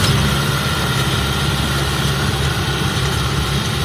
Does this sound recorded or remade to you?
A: remade